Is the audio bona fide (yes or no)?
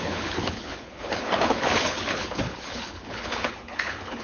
no